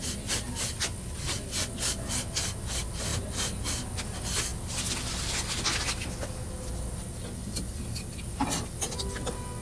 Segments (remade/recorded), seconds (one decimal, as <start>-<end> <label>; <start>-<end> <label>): 0.0-9.6 recorded